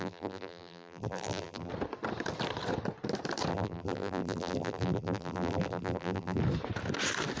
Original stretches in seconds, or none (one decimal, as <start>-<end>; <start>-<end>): 1.7-3.5; 6.4-7.4